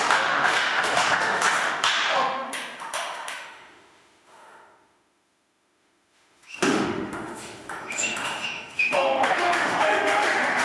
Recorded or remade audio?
remade